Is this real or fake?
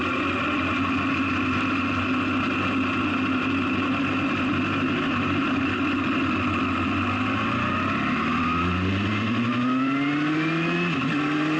real